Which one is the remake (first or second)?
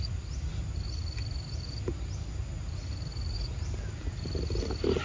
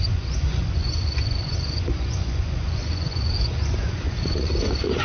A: second